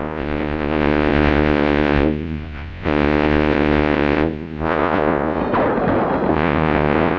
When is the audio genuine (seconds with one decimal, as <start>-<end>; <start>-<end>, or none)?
5.4-6.3